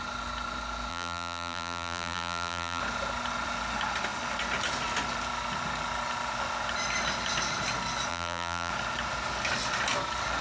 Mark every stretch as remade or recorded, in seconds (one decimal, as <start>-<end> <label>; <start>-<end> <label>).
0.0-0.9 recorded; 0.9-2.8 remade; 2.8-8.1 recorded; 8.1-8.7 remade; 8.7-10.4 recorded